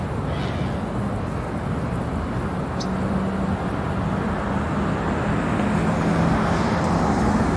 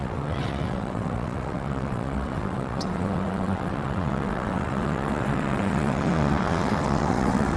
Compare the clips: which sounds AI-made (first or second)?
second